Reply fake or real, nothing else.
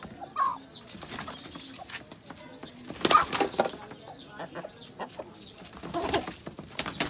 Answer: real